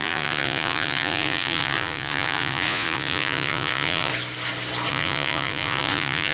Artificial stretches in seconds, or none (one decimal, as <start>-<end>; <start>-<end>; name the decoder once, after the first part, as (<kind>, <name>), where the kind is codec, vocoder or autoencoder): 0.0-4.1 (vocoder, Vocos); 4.9-6.3